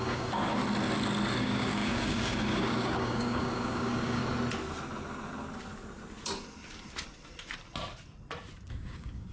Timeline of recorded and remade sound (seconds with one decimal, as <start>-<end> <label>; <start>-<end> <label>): 0.0-0.6 remade; 0.6-1.4 recorded; 1.4-4.2 remade; 4.2-8.7 recorded; 8.7-9.3 remade